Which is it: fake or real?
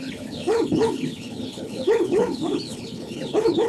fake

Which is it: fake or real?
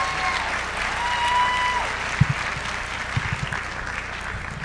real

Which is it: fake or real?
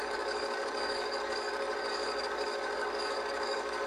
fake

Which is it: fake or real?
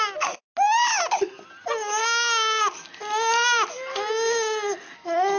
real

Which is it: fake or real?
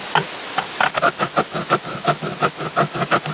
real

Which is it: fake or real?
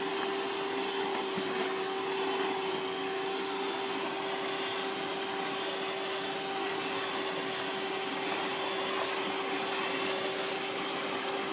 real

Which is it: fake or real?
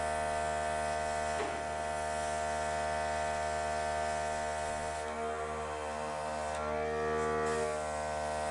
real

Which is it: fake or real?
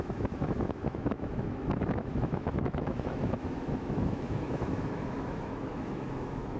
fake